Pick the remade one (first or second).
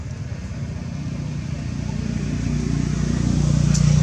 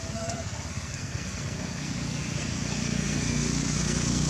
second